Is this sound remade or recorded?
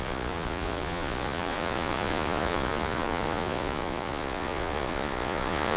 remade